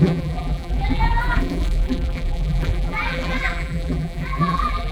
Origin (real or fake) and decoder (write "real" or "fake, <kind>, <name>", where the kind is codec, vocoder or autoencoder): fake, vocoder, BigVGAN v2